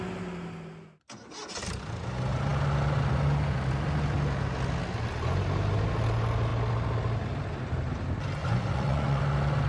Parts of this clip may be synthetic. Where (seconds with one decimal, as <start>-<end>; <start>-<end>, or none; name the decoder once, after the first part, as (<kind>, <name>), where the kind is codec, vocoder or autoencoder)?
8.4-9.2 (vocoder, Vocos)